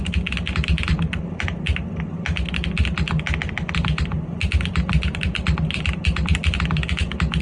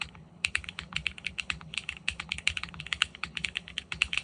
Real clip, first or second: first